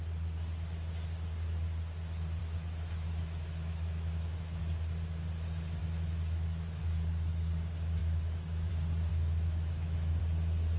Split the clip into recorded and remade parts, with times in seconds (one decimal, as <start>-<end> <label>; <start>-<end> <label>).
0.0-2.4 recorded; 2.4-4.6 remade; 4.6-5.8 recorded; 5.8-6.8 remade; 6.8-8.0 recorded; 8.0-8.7 remade; 8.7-9.1 recorded; 9.1-10.2 remade; 10.2-10.8 recorded